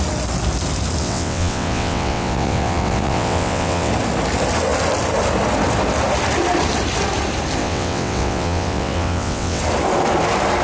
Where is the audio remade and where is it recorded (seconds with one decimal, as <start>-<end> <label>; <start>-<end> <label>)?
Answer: 0.0-1.0 recorded; 1.0-3.9 remade; 3.9-7.6 recorded; 7.6-9.6 remade; 9.6-10.6 recorded